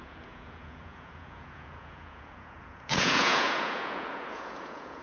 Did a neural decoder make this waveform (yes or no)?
yes